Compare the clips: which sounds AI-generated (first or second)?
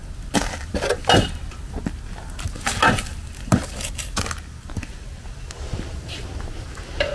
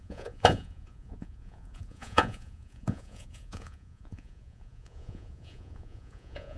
second